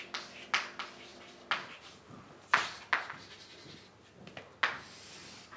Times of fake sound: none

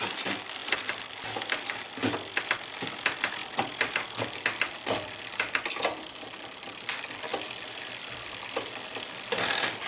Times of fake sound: 7.3-9.2 (vocoder, BigVGAN v2)

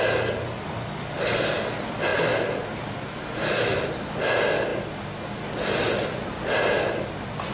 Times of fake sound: none

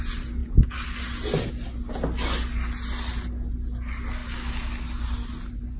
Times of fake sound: none

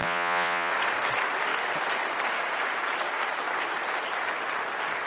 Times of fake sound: 0.0-0.7 (vocoder, Vocos)

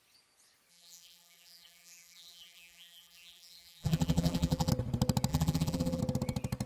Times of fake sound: 0.7-4.7 (vocoder, BigVGAN v2); 5.3-6.0